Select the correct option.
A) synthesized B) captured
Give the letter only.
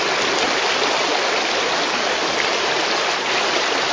A